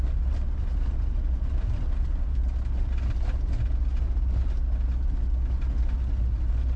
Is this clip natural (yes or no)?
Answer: yes